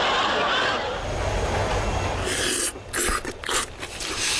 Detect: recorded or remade recorded